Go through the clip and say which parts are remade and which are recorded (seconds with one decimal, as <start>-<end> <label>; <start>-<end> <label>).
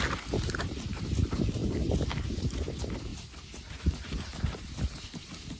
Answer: 0.0-5.6 recorded